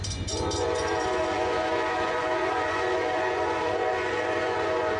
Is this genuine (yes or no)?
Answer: no